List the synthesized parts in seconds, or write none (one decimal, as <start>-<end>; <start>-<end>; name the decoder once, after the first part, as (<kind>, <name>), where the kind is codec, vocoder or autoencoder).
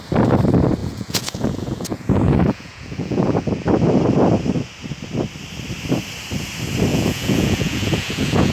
0.8-3.5 (vocoder, Vocos); 6.9-8.5